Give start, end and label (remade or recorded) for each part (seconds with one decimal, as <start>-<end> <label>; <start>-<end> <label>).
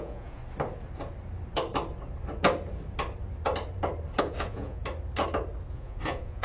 0.0-0.4 remade; 0.4-4.2 recorded; 4.2-4.8 remade; 4.8-5.7 recorded; 5.7-6.4 remade